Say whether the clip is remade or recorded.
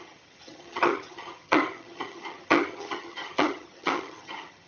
remade